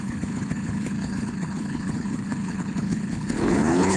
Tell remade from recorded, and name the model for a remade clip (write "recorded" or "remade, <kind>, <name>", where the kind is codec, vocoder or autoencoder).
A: remade, codec, HILCodec